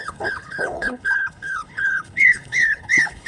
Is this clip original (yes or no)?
no